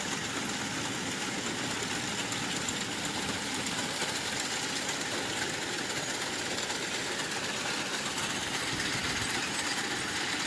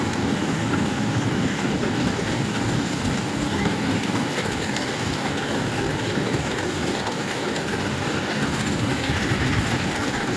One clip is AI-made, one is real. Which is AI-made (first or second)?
second